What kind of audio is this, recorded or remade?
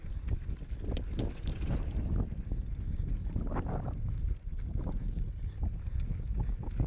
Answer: recorded